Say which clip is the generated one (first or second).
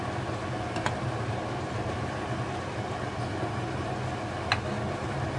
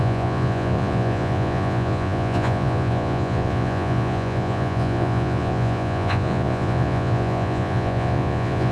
second